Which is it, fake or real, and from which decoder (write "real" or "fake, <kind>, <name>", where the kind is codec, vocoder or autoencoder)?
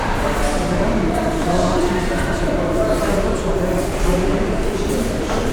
fake, vocoder, BigVGAN v2